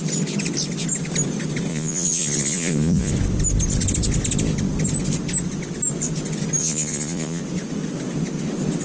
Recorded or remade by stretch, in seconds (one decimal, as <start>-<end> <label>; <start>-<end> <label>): 0.0-1.7 recorded; 1.7-3.1 remade; 3.1-6.6 recorded; 6.6-7.4 remade; 7.4-8.8 recorded